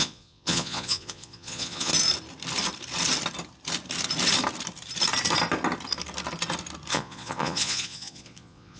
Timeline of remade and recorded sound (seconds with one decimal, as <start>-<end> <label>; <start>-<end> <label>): 0.0-1.9 remade; 1.9-6.9 recorded; 6.9-8.8 remade